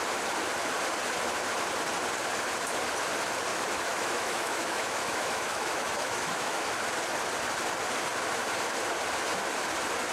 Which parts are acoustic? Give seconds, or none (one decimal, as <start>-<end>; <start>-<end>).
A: 0.0-3.5; 6.7-10.1